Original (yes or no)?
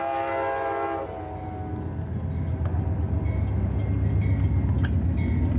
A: yes